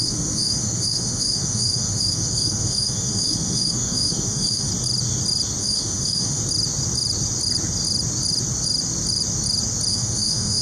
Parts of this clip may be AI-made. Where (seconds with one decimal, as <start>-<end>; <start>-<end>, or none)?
0.0-4.7; 5.6-6.4; 9.9-10.6